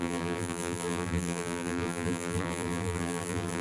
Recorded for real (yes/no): no